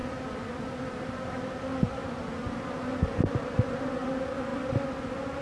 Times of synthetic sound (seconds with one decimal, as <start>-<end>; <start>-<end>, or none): none